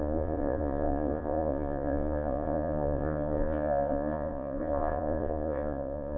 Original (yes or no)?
no